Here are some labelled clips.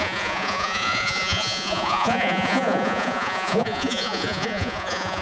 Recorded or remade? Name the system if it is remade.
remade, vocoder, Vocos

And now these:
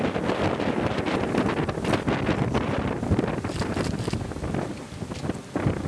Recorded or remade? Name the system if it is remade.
recorded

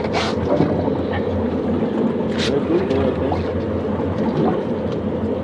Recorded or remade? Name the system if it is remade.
recorded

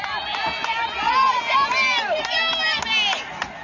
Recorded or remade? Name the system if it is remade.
recorded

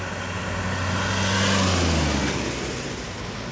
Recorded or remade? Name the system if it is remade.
recorded